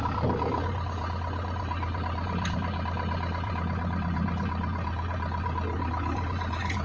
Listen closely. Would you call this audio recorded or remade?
recorded